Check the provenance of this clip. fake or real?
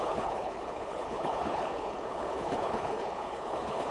fake